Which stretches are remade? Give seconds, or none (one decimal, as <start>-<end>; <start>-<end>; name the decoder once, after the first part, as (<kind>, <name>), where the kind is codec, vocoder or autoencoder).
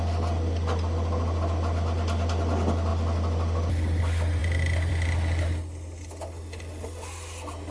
none